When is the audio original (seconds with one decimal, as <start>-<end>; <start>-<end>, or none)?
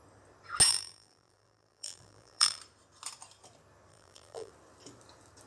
0.0-0.7; 2.6-3.9; 4.5-5.5